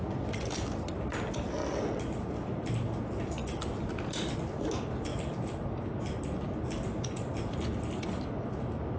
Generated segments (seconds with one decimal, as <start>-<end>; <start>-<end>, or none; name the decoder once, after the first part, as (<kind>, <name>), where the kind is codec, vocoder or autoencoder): none